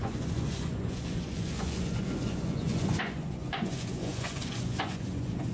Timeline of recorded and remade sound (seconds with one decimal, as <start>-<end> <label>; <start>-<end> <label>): 0.0-5.5 remade